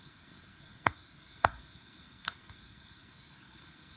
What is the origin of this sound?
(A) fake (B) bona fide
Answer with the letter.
A